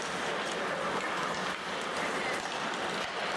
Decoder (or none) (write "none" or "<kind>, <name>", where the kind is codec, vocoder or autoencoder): none